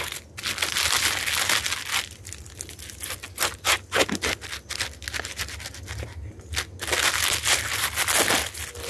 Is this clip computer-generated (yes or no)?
no